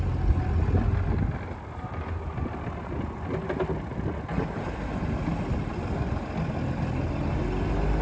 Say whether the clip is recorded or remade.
recorded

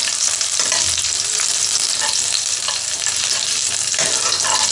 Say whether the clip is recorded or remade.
recorded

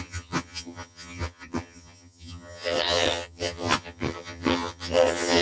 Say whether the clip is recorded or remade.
remade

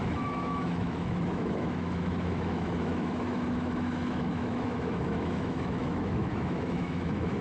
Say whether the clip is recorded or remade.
remade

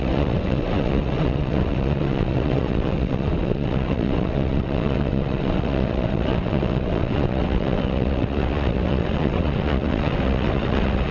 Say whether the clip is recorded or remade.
remade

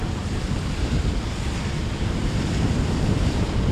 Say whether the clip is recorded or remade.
recorded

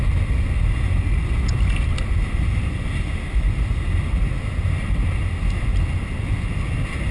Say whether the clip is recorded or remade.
recorded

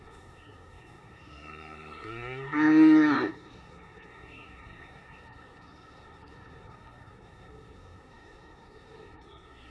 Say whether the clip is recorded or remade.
remade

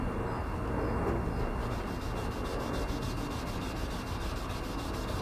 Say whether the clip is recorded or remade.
recorded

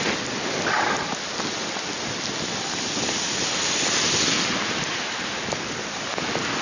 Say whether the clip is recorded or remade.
recorded